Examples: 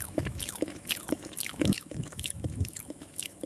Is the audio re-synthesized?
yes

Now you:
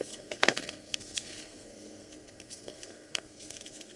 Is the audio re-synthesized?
yes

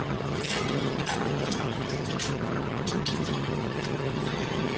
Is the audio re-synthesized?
yes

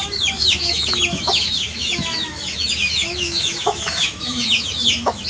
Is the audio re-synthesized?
yes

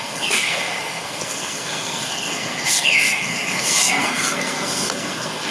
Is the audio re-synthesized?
yes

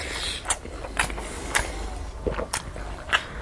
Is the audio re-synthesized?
no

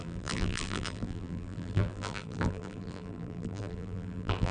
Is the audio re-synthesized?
yes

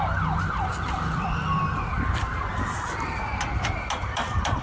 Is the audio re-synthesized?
no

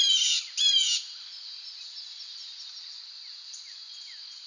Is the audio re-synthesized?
no